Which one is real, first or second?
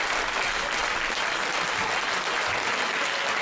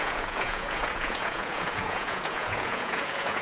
first